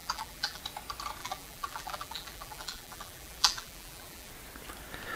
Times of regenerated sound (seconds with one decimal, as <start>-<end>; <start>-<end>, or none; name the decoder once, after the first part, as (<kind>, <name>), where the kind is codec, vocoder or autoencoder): 0.0-0.6 (vocoder, BigVGAN v2); 1.2-4.3